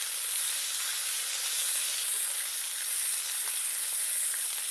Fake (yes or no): no